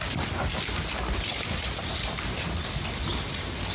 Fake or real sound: real